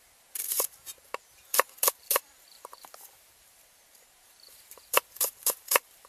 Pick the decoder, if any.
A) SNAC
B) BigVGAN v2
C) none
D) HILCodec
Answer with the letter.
B